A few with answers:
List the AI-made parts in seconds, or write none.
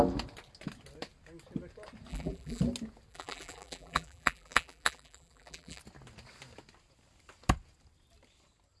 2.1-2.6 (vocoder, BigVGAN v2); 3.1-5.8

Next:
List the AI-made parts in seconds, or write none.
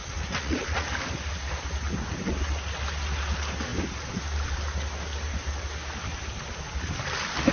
0.0-0.9 (vocoder, Vocos)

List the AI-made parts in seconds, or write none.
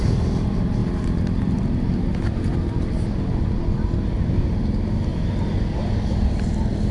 none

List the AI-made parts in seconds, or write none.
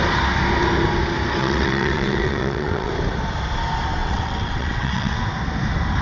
1.4-2.9 (vocoder, WaveNeXt); 4.0-5.2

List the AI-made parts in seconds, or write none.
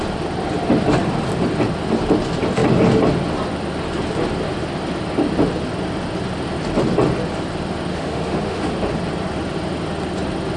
7.9-8.7 (autoencoder, DAC-VAE)